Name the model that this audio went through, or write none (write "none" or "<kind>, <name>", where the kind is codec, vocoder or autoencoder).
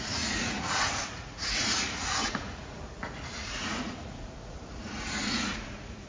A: vocoder, Vocos